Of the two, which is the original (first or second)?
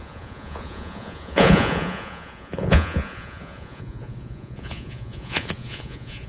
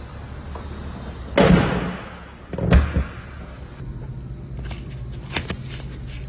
second